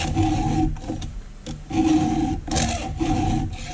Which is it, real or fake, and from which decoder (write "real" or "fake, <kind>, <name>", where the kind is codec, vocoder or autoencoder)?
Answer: real